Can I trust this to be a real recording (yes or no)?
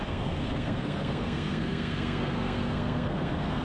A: no